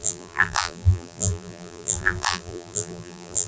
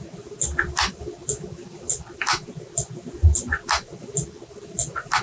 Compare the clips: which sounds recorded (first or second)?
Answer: second